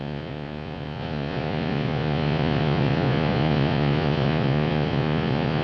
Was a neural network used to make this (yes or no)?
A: yes